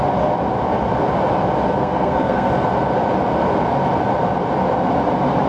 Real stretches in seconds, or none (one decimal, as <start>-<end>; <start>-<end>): 0.0-1.8; 2.5-5.5

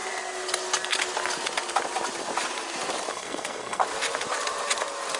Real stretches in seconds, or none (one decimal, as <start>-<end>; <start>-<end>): 0.0-3.1; 3.8-5.2

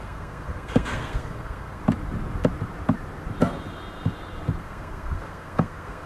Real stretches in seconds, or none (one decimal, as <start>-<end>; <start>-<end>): 1.8-4.6

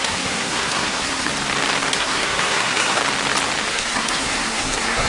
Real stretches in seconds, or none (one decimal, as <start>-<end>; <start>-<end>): 1.3-1.9; 3.0-3.7

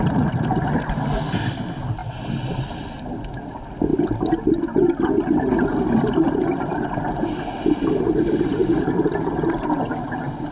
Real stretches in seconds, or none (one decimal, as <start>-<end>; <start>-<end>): 0.0-10.5